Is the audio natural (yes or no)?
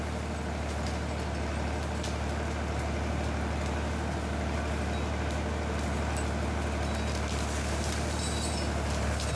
yes